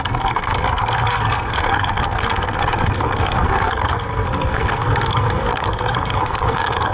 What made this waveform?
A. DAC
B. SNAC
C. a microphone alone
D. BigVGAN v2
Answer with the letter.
B